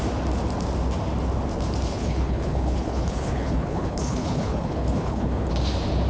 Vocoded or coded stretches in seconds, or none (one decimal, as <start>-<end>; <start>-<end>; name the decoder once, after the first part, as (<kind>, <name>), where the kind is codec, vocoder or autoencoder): 1.9-5.5 (codec, HILCodec)